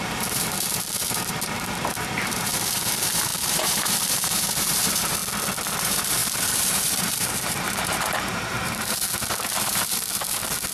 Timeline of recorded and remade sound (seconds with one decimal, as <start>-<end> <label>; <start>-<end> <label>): 0.0-5.2 remade; 5.2-5.8 recorded; 5.8-10.7 remade

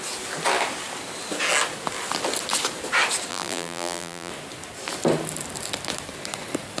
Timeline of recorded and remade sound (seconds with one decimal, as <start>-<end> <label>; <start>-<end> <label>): 0.0-3.3 recorded; 3.3-4.3 remade; 4.3-6.8 recorded